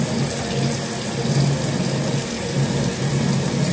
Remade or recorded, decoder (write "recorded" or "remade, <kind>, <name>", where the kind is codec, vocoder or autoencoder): recorded